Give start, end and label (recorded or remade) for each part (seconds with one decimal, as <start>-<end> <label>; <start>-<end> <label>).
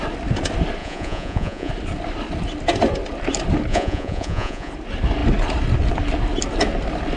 0.0-0.8 recorded; 0.8-1.7 remade; 1.7-3.7 recorded; 3.7-4.7 remade; 4.7-7.2 recorded